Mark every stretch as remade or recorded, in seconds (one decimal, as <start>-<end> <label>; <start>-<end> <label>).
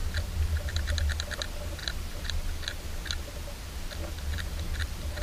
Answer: 0.0-1.8 recorded; 1.8-2.3 remade; 2.3-5.2 recorded